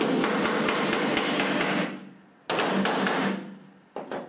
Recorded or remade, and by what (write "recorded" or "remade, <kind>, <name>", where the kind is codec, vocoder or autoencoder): recorded